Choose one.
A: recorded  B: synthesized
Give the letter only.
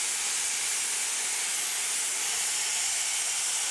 A